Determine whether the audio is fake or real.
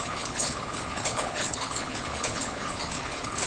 fake